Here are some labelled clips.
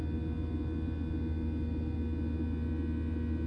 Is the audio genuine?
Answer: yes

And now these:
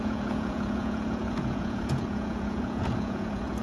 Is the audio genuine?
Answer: no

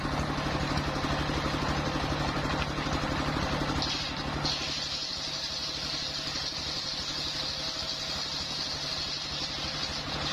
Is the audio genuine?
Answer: yes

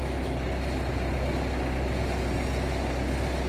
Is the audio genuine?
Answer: yes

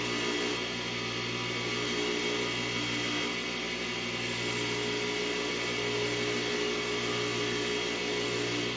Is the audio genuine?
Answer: yes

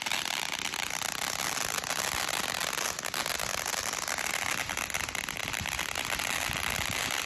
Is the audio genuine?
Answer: yes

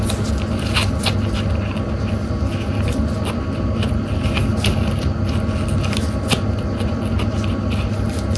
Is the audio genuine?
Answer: yes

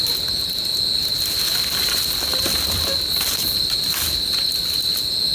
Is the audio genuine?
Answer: yes